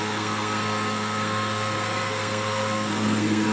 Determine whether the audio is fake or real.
fake